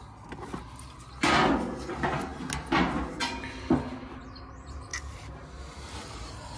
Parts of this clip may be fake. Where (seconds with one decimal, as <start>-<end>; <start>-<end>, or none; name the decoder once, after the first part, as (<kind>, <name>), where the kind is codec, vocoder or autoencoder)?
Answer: none